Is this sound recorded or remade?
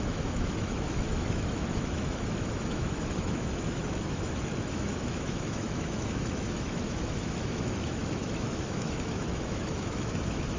remade